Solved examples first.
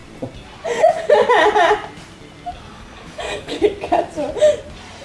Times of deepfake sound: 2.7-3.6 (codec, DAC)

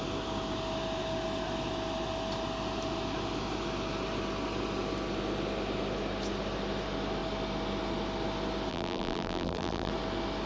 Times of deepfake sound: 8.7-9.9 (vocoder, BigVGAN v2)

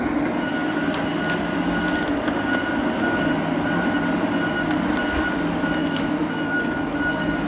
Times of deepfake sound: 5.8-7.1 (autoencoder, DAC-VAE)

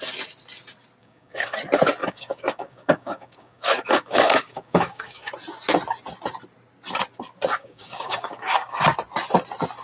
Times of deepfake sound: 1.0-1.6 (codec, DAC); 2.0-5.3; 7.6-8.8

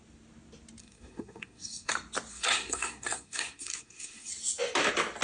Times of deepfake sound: 0.8-1.9 (codec, SNAC); 2.3-4.3

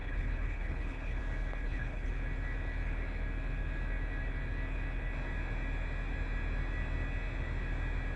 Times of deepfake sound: 0.0-1.2 (codec, HILCodec); 1.6-2.1

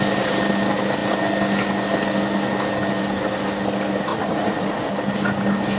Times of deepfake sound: 4.1-4.9 (vocoder, Vocos)

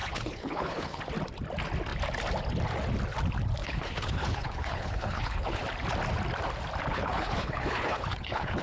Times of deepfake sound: 0.0-1.0 (codec, HILCodec); 3.6-5.6; 6.9-8.6